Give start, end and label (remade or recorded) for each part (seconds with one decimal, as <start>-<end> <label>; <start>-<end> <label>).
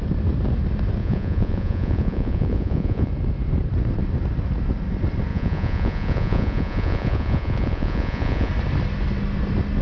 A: 0.0-1.0 recorded; 1.0-3.1 remade; 3.1-5.3 recorded; 5.3-8.5 remade; 8.5-9.8 recorded